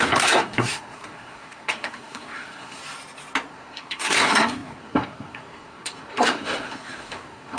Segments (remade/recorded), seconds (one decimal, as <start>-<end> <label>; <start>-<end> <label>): 0.0-2.8 remade; 2.8-3.5 recorded; 3.5-7.6 remade